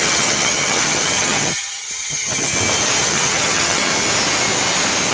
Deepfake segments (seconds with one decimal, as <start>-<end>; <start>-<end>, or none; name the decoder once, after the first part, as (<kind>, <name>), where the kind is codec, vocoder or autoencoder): 0.0-2.5 (vocoder, HiFi-GAN); 3.0-3.9